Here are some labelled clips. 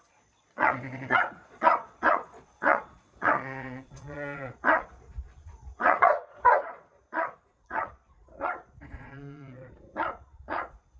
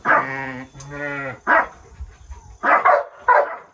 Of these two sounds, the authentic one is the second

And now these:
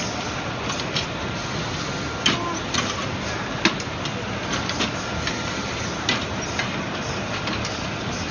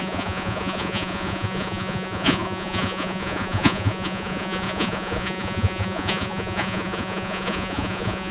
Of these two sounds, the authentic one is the first